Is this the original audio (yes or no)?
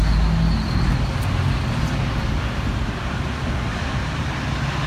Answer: yes